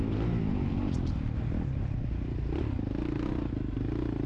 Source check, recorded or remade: recorded